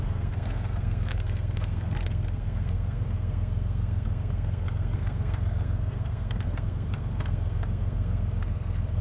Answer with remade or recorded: remade